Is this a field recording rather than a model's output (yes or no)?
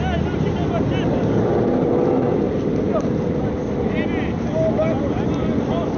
yes